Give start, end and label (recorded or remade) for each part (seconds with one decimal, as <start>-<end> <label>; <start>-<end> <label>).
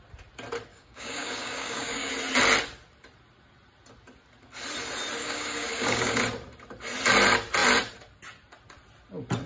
0.0-0.7 recorded; 0.7-2.1 remade; 2.1-5.2 recorded; 5.2-6.2 remade; 6.2-9.5 recorded